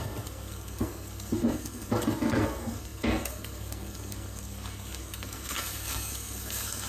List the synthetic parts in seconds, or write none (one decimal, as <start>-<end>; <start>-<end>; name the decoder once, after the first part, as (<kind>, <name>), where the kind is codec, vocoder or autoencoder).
0.0-6.9 (codec, SNAC)